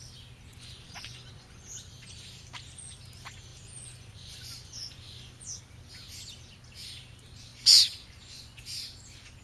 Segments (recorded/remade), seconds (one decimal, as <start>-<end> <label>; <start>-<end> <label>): 0.0-0.5 recorded; 0.5-1.7 remade; 1.7-3.5 recorded; 3.5-5.6 remade; 5.6-7.5 recorded; 7.5-8.6 remade; 8.6-9.4 recorded